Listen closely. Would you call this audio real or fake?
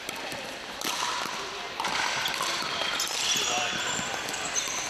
real